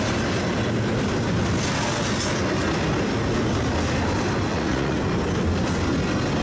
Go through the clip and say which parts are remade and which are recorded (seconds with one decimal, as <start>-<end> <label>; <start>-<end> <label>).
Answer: 0.0-4.5 recorded; 4.5-5.0 remade; 5.0-6.4 recorded